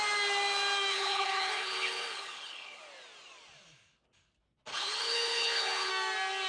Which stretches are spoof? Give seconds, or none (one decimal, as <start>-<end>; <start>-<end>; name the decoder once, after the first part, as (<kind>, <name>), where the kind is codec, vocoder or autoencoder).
0.9-2.8 (codec, HILCodec); 4.7-5.9